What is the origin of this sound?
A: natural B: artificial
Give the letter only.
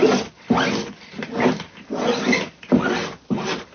A